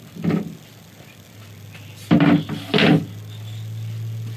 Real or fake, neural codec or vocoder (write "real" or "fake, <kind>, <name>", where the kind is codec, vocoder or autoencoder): real